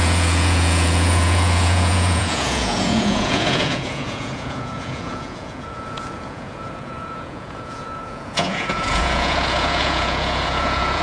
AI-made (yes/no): yes